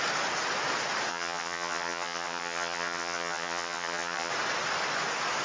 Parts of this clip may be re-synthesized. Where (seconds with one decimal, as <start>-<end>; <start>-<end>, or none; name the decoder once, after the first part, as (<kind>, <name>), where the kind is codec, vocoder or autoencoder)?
1.1-4.3 (vocoder, HiFi-GAN)